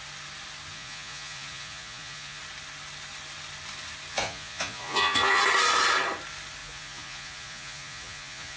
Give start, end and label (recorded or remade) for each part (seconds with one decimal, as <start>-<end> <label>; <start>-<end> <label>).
0.0-0.7 recorded; 0.7-2.4 remade; 2.4-4.1 recorded; 4.1-5.4 remade; 5.4-6.6 recorded; 6.6-8.6 remade